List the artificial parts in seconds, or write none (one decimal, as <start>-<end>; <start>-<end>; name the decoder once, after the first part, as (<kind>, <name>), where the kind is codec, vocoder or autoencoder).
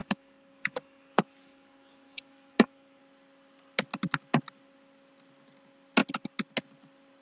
0.0-3.0 (codec, DAC)